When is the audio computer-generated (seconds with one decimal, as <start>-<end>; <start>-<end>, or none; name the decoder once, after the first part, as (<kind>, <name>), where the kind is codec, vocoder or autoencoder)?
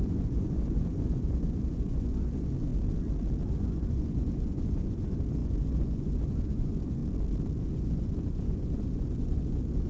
0.0-2.7 (vocoder, Vocos); 3.5-7.0; 7.6-9.9